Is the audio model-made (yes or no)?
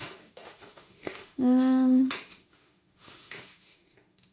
yes